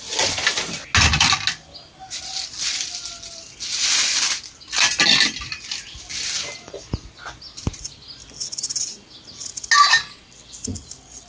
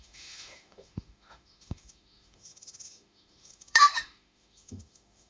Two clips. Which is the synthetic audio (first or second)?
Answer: second